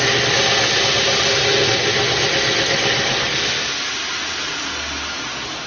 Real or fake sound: real